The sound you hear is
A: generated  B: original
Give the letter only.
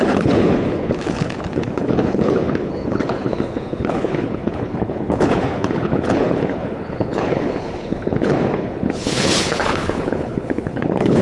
A